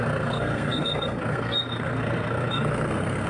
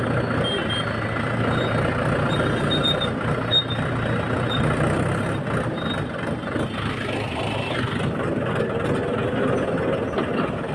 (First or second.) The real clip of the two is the second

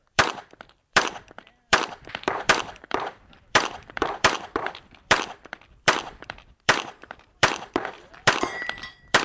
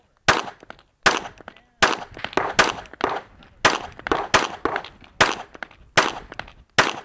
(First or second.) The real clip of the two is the second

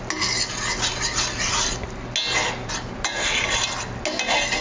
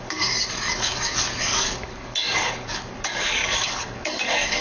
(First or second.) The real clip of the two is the first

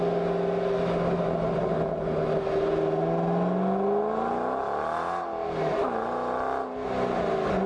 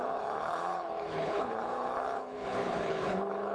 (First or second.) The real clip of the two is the first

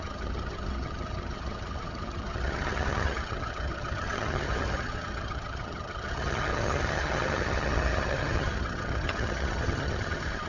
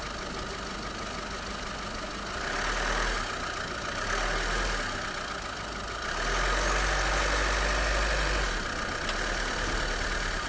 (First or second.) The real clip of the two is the second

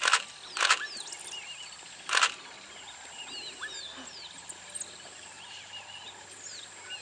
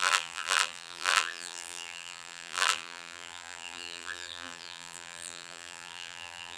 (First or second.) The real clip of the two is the first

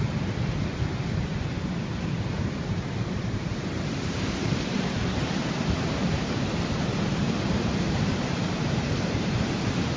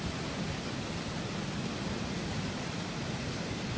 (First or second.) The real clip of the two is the second